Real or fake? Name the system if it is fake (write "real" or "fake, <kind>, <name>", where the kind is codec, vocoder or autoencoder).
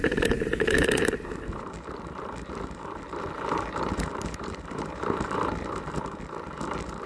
fake, vocoder, BigVGAN v2